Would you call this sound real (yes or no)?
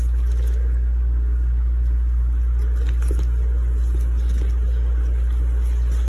yes